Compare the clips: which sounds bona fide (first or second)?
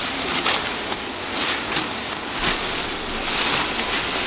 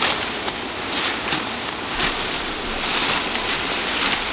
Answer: first